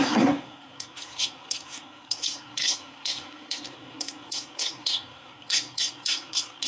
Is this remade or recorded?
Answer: remade